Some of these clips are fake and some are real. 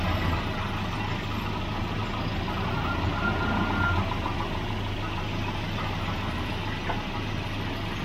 real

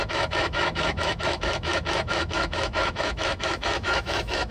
fake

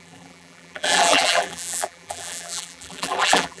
fake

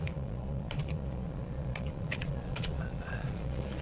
fake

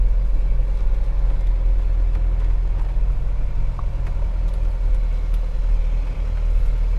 real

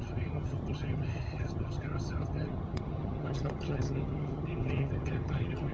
fake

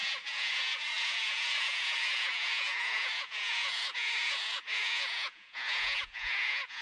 fake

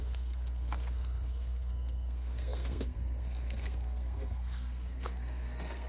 fake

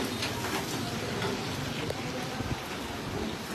real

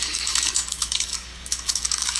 fake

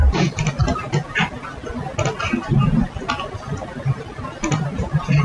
real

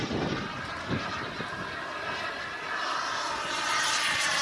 real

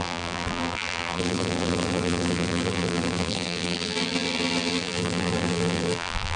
fake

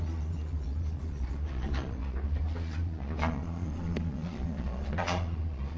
fake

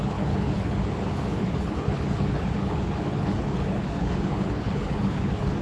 fake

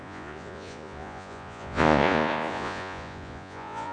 fake